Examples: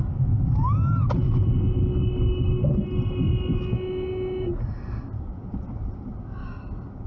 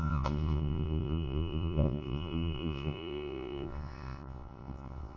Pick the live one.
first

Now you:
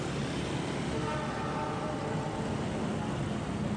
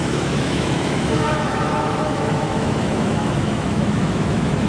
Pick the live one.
first